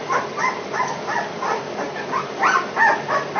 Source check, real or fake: real